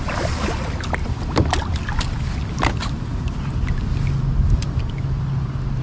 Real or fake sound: real